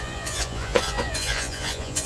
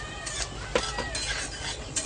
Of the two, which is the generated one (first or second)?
first